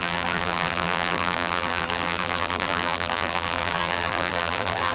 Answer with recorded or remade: remade